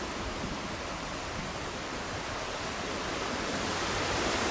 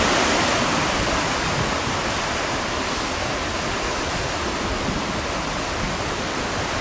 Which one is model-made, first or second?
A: first